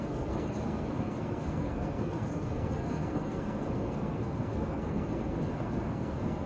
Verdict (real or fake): fake